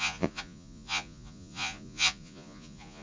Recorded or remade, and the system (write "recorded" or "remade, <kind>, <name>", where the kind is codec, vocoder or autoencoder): remade, vocoder, Vocos